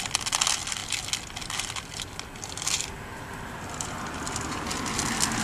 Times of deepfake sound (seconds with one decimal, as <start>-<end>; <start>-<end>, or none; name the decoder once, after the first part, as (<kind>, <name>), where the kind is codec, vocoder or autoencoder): none